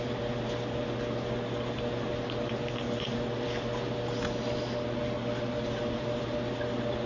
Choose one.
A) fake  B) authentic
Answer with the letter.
B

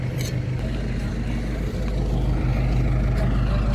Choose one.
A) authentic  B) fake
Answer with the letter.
A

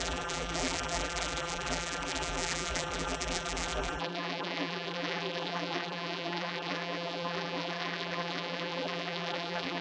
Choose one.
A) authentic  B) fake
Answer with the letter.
B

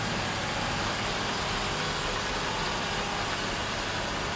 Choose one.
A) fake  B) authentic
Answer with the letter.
B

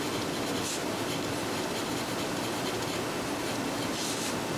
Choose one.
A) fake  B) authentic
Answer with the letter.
B